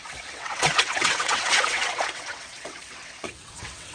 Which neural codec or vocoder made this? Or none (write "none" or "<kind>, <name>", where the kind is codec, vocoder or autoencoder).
vocoder, WaveNeXt